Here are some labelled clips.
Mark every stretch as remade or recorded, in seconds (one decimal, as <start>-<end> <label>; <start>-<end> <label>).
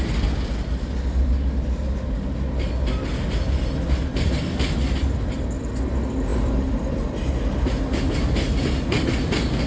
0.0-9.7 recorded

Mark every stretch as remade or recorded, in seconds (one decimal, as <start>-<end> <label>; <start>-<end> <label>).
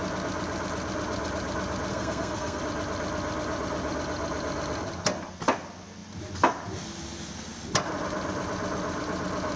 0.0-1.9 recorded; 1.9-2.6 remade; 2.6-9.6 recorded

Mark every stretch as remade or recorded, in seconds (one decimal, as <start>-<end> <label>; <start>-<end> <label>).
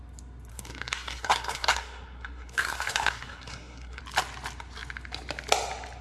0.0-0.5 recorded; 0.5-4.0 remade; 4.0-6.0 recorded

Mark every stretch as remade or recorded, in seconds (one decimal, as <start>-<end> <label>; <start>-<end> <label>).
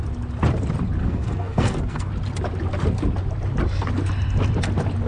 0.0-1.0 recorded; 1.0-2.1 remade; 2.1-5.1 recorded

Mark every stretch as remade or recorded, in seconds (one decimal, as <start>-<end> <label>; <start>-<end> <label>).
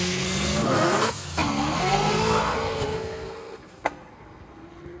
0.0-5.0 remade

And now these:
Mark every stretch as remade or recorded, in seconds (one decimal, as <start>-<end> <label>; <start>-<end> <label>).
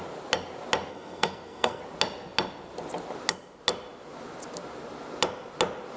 0.0-0.9 recorded; 0.9-1.8 remade; 1.8-6.0 recorded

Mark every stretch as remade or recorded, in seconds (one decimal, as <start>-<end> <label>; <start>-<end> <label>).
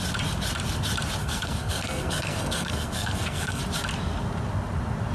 0.0-1.2 recorded; 1.2-3.6 remade; 3.6-5.1 recorded